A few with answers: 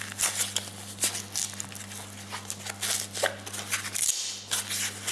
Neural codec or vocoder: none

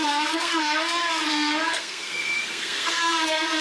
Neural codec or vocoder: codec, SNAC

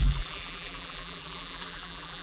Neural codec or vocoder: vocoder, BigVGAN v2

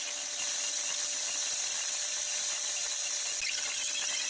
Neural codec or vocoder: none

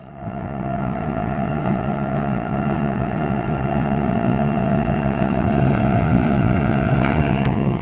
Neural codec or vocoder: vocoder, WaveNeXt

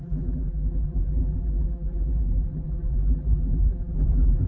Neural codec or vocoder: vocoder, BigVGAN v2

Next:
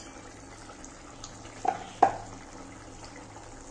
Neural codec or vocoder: none